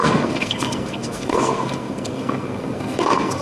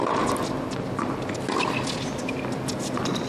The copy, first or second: first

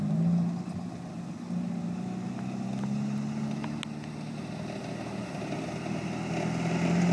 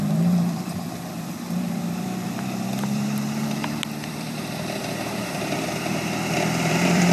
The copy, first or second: second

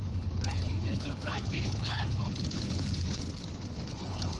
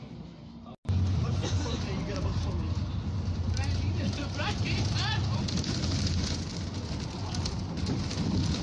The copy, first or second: first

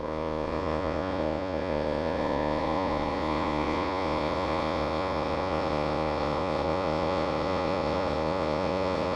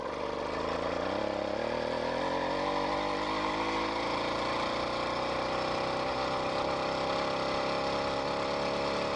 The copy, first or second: first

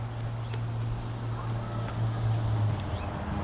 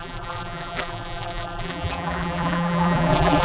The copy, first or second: second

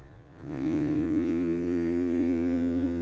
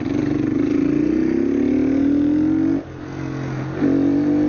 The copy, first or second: first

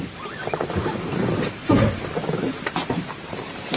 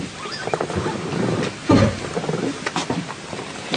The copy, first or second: first